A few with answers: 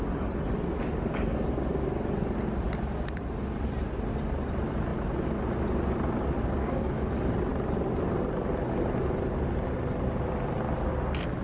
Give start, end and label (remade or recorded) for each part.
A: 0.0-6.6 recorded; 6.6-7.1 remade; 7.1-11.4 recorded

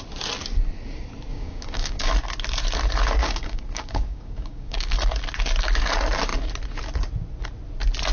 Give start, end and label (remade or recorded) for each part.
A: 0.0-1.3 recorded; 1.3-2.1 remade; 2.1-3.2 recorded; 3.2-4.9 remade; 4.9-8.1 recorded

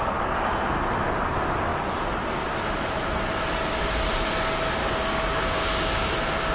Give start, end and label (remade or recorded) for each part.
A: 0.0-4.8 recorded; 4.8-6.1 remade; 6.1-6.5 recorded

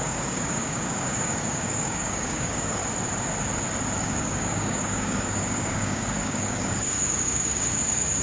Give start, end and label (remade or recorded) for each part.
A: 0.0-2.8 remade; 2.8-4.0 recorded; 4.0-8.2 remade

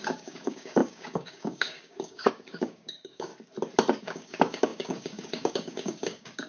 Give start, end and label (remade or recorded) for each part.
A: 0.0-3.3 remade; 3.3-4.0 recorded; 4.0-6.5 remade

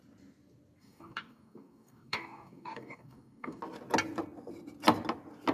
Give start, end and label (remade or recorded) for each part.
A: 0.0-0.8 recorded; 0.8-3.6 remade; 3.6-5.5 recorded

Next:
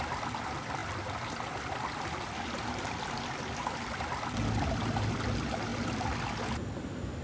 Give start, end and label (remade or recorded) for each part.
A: 0.0-7.2 recorded